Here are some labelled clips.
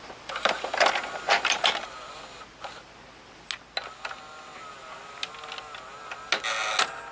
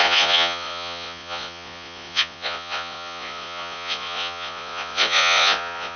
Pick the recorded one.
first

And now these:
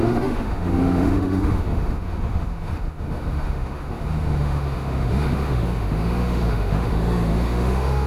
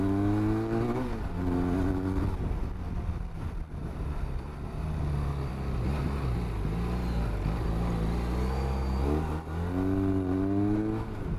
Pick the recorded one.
second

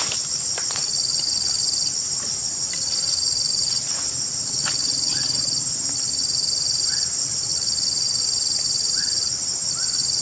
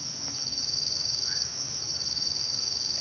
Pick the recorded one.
first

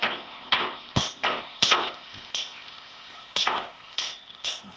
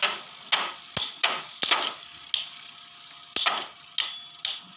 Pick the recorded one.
second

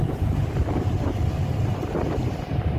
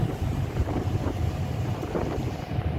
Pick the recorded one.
first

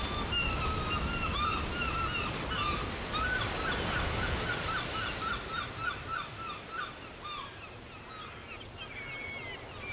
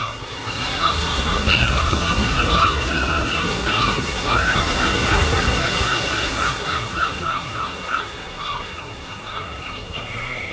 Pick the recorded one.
first